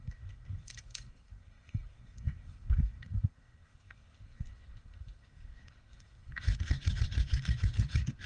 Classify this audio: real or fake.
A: fake